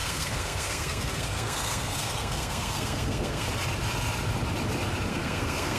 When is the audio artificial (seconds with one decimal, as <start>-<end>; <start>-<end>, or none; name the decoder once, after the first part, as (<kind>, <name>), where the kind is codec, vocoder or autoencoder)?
0.0-3.5 (codec, SNAC); 5.1-5.8